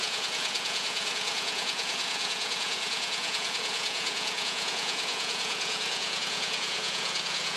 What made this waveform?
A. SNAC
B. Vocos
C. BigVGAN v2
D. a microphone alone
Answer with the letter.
B